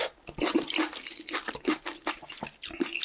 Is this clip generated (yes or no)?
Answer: no